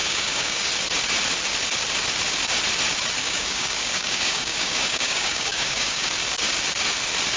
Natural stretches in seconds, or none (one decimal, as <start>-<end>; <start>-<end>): 0.7-3.2; 6.1-7.4